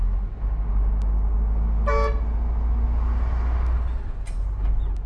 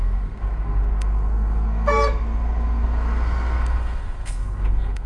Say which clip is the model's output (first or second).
second